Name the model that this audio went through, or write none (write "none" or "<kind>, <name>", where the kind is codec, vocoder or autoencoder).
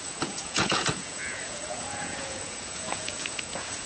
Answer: vocoder, Vocos